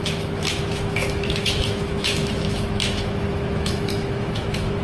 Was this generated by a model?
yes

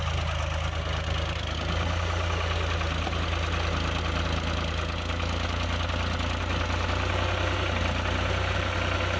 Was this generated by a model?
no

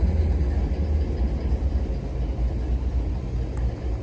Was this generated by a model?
no